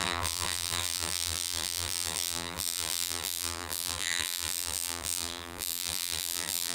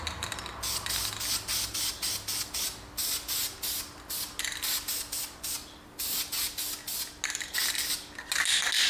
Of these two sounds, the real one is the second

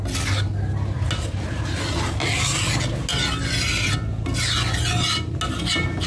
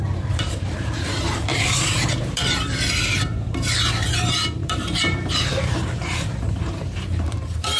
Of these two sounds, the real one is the first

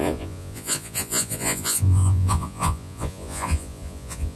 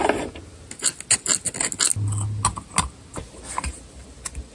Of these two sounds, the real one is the second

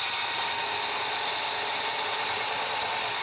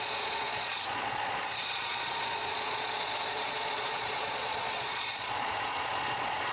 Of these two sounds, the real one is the first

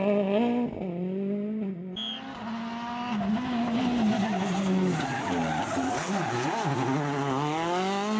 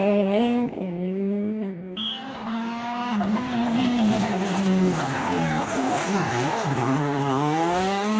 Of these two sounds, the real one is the first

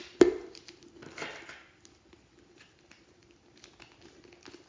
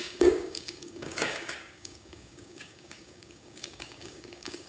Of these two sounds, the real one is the first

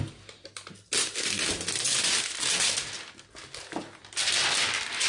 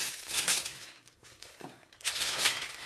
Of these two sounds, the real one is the first